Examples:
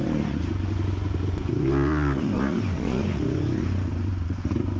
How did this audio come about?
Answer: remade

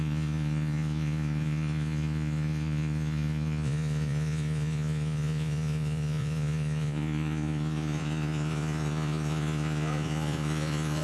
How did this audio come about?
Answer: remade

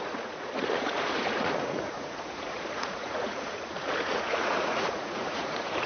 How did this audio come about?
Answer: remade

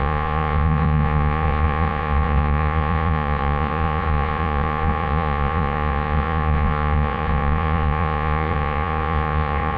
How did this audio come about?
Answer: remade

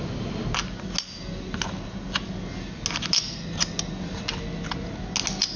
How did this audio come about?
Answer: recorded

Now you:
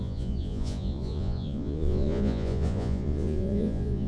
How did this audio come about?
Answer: remade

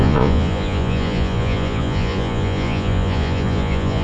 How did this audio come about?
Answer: remade